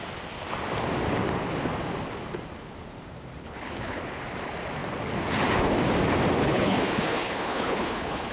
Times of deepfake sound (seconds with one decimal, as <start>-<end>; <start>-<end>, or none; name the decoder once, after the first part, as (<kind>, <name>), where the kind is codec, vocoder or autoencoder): 3.4-4.0 (codec, HILCodec); 6.4-8.3